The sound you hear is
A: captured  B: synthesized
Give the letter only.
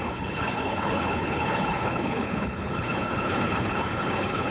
B